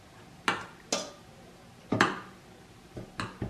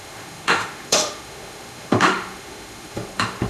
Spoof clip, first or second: second